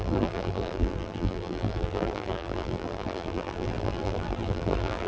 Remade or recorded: remade